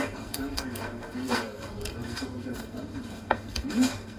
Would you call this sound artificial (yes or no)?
yes